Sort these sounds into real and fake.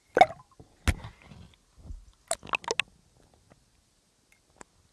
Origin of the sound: real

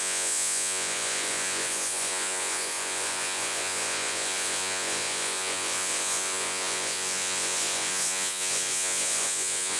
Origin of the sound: fake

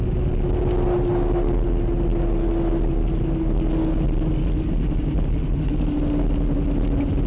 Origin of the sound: real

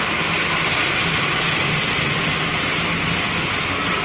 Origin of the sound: real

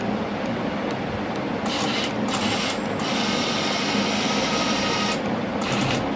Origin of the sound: real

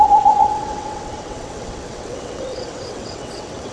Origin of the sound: fake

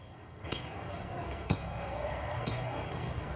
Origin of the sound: fake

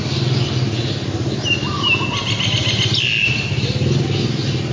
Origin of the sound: real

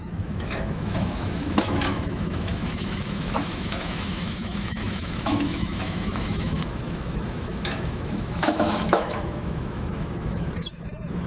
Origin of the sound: fake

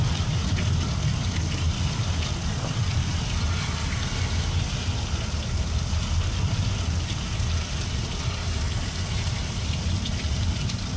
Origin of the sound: real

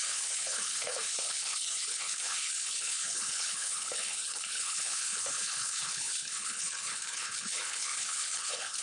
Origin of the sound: fake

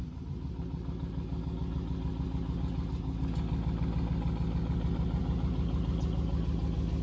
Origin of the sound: real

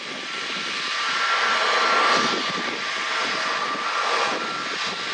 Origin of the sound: real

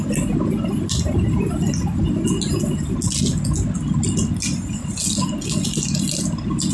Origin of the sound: real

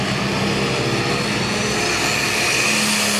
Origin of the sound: real